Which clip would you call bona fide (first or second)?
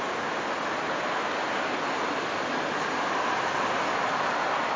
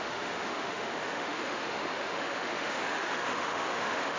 first